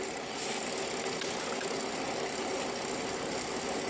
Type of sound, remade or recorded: recorded